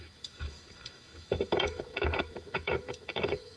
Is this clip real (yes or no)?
no